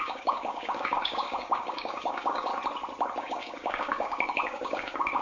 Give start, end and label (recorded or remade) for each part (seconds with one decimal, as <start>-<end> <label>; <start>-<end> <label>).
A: 0.0-2.5 remade; 2.5-3.2 recorded; 3.2-5.2 remade